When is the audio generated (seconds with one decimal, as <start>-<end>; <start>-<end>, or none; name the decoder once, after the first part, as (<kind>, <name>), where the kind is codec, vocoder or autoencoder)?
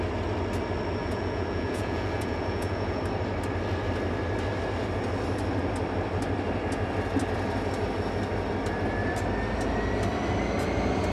1.0-3.0 (vocoder, Vocos)